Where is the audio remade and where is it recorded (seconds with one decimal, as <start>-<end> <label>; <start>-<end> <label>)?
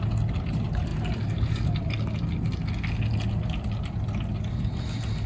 0.0-0.9 recorded; 0.9-1.9 remade; 1.9-5.3 recorded